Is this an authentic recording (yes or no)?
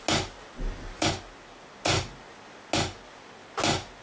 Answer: yes